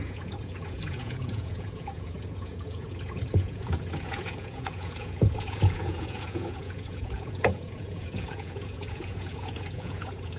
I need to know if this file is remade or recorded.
remade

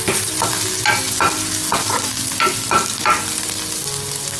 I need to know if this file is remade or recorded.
recorded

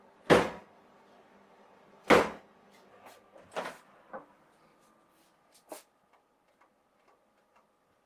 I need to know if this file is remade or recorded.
recorded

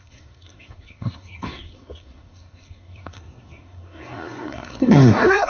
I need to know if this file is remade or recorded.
remade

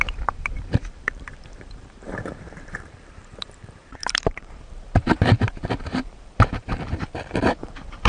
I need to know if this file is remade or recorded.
remade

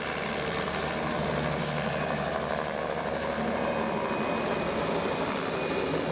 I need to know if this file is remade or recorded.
recorded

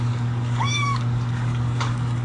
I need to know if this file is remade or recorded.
remade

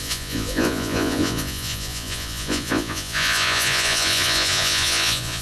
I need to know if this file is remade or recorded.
remade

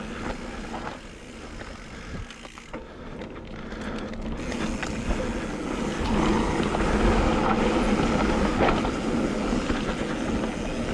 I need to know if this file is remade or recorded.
recorded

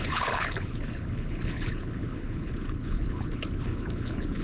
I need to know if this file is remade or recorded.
remade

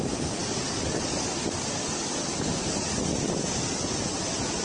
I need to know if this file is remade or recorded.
recorded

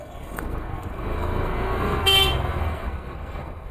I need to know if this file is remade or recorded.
remade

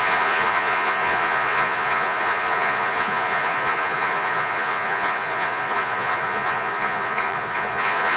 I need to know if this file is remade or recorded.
remade